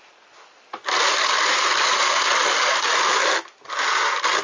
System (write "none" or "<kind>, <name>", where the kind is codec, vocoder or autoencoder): none